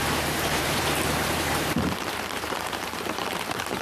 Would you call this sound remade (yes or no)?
yes